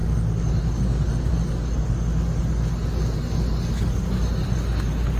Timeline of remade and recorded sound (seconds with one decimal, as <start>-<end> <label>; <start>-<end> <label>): 0.0-5.2 recorded